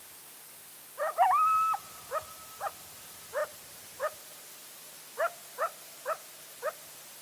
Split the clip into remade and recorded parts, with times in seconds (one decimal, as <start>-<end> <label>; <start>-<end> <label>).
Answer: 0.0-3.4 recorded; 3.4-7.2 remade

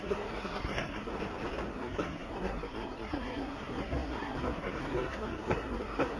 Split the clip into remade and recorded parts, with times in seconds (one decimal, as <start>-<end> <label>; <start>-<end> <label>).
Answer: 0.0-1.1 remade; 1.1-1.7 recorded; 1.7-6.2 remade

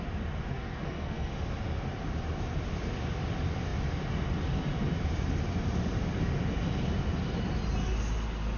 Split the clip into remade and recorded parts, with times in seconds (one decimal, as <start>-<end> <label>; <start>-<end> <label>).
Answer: 0.0-0.5 recorded; 0.5-1.3 remade; 1.3-8.6 recorded

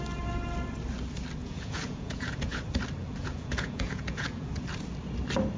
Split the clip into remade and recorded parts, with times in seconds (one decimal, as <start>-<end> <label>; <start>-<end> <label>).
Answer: 0.0-1.4 recorded; 1.4-2.6 remade; 2.6-3.0 recorded; 3.0-4.5 remade; 4.5-5.6 recorded

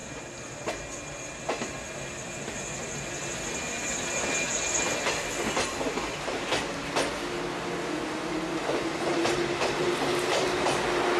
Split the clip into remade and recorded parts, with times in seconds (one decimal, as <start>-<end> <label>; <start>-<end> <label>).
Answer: 0.0-11.2 recorded

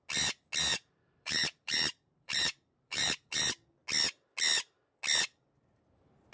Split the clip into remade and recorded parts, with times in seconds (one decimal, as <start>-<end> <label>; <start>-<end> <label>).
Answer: 0.0-0.7 recorded; 0.7-3.4 remade; 3.4-6.3 recorded

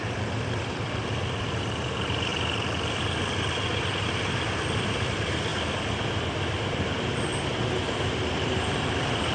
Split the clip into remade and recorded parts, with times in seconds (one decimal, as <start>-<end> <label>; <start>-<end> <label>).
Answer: 0.0-7.3 remade; 7.3-7.9 recorded; 7.9-9.3 remade

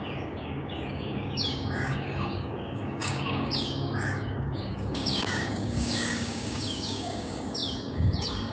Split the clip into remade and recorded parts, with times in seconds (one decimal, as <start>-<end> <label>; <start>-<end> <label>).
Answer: 0.0-8.5 remade